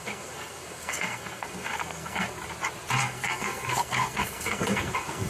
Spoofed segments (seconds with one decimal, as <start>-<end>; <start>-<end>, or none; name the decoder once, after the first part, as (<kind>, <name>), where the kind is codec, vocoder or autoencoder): 0.0-2.4 (codec, SNAC); 3.0-5.3